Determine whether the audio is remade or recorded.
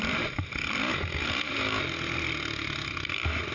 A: recorded